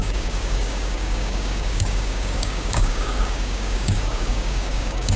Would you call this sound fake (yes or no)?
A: yes